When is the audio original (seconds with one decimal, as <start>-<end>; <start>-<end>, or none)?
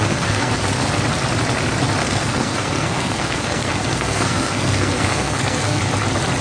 0.5-2.0; 5.8-6.4